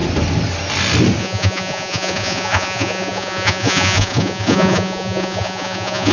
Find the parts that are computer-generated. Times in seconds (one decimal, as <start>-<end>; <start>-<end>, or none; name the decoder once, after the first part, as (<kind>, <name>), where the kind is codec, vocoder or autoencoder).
1.2-6.1 (vocoder, Vocos)